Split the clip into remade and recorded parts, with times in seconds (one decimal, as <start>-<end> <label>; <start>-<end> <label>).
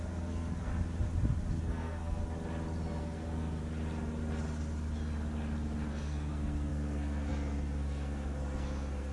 0.0-0.7 remade; 0.7-1.6 recorded; 1.6-2.2 remade; 2.2-3.0 recorded; 3.0-3.6 remade; 3.6-5.9 recorded; 5.9-9.1 remade